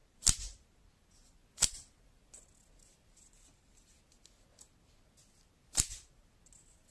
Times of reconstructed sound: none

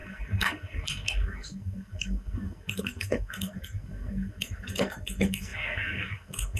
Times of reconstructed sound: 0.0-6.6

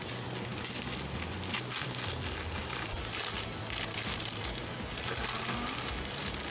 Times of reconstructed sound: none

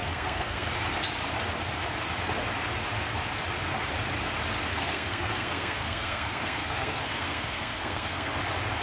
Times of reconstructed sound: 0.0-0.7; 4.7-8.3

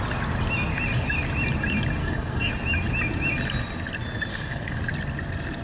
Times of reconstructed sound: 2.0-2.5; 4.3-4.8

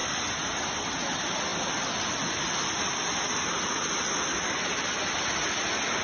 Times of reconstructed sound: none

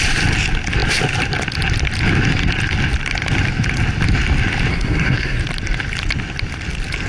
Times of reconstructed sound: 4.7-5.4